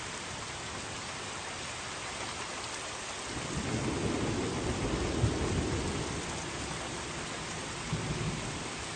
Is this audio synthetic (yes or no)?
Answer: no